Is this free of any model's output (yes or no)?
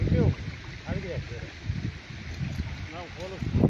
yes